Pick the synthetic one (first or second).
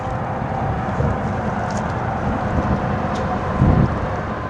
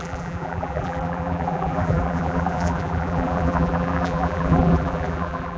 second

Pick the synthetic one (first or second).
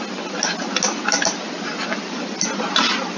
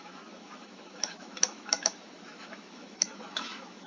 second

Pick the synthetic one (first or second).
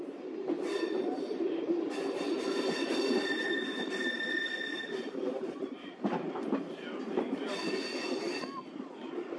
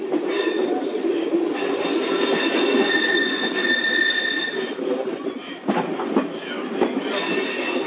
first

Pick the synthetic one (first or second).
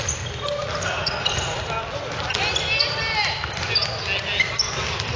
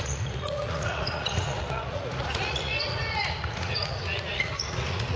second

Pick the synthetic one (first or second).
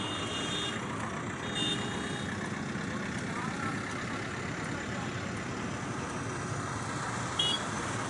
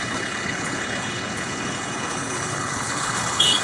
second